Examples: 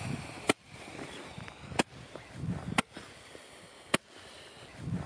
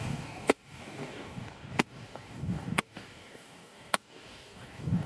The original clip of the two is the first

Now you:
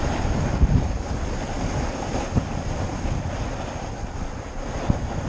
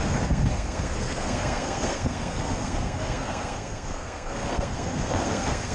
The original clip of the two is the first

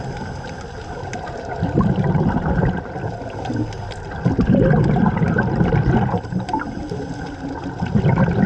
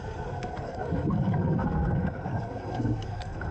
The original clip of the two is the first